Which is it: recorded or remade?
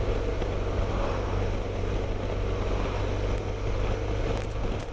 recorded